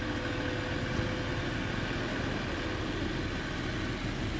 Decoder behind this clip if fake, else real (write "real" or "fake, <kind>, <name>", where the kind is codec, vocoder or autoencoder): real